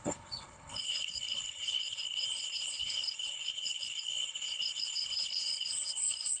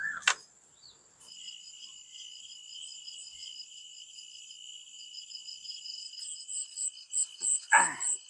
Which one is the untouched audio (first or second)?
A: second